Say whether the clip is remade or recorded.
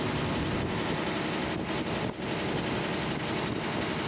recorded